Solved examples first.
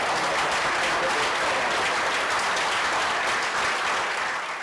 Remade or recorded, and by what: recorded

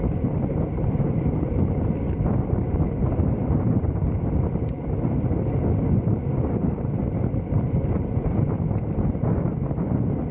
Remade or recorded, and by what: recorded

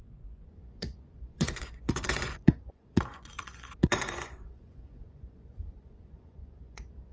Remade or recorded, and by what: remade, vocoder, Vocos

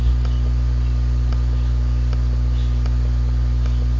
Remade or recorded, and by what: recorded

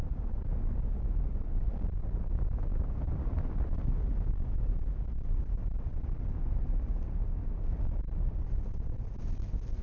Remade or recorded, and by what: recorded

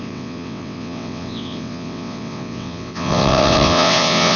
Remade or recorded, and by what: remade, vocoder, WaveNeXt